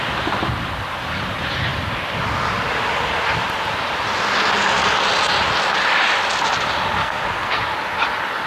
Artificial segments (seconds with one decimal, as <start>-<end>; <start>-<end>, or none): 7.0-7.6